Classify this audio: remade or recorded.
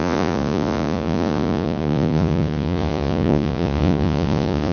remade